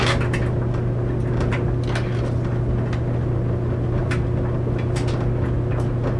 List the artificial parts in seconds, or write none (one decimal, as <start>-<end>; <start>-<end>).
none